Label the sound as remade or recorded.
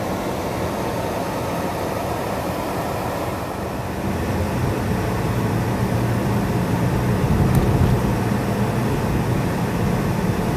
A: recorded